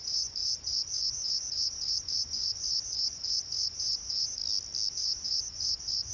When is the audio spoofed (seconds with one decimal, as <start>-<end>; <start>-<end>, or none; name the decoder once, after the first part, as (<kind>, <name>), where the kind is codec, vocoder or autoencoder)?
0.0-4.4 (vocoder, Vocos); 4.9-6.1